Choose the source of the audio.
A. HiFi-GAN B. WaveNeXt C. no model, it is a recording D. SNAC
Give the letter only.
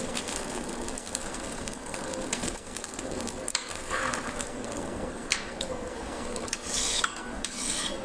D